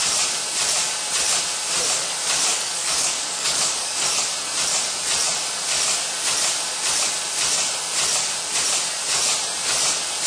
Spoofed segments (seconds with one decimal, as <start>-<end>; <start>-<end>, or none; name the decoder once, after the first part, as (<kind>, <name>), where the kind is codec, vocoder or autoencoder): 2.5-4.2 (codec, DAC)